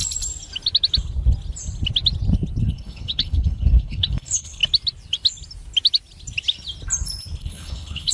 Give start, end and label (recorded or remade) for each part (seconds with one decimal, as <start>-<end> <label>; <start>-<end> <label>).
0.0-2.6 recorded; 2.6-4.6 remade; 4.6-7.4 recorded; 7.4-8.1 remade